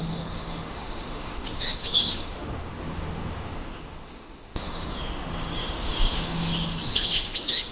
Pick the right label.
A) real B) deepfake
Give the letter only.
B